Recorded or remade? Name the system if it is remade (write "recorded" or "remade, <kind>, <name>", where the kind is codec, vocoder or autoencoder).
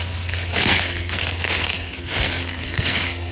remade, codec, SNAC